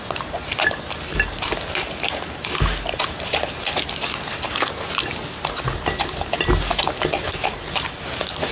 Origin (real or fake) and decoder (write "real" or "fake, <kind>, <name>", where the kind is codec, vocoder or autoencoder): real